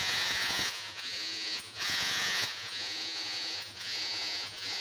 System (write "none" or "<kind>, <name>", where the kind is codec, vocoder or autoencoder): vocoder, Vocos